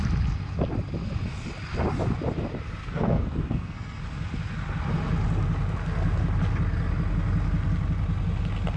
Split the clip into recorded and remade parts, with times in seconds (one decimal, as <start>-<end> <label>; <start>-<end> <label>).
0.0-2.8 recorded; 2.8-4.0 remade; 4.0-8.8 recorded